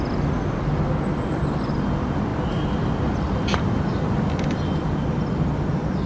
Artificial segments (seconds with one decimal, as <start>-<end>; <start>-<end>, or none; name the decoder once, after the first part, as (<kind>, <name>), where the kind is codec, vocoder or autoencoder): none